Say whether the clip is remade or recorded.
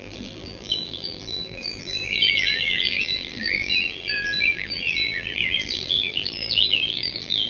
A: remade